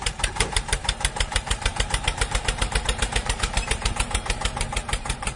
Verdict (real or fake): fake